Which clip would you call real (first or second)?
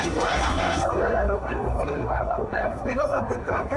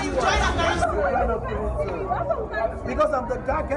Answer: second